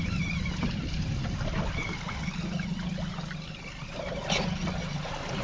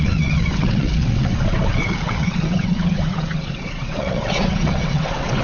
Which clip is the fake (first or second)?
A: second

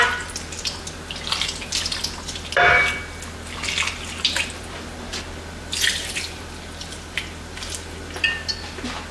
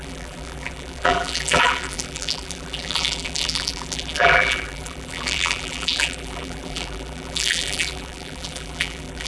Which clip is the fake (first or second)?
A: second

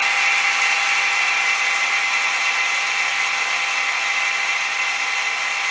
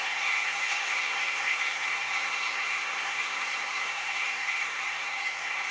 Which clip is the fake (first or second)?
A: second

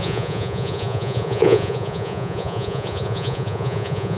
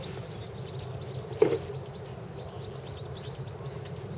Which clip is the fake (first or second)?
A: first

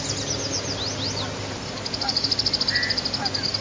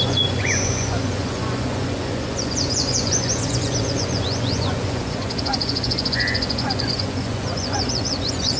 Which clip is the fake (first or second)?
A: second